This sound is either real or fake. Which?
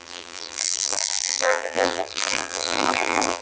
fake